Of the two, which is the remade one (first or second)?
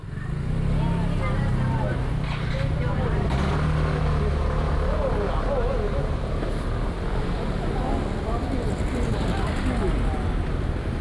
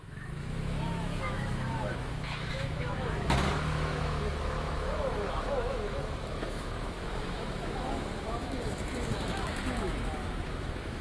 second